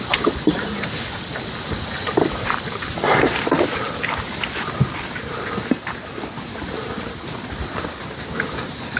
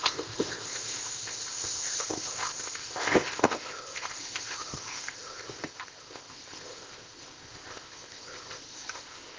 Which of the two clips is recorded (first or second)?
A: first